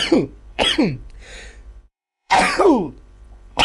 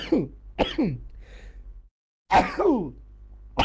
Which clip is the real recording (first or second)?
second